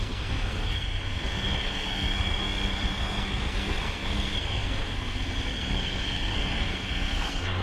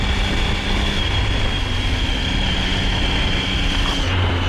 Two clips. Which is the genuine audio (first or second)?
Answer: second